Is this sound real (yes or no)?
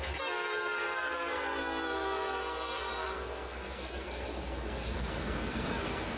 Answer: no